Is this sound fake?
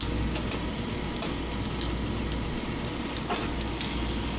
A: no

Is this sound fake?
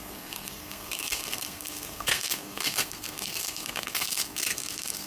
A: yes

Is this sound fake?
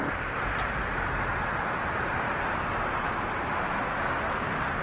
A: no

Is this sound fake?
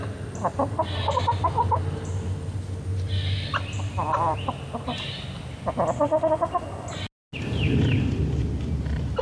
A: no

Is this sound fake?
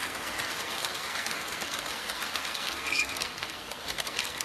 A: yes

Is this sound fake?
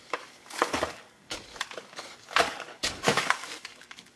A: yes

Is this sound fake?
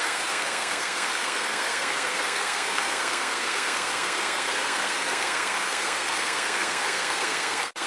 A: yes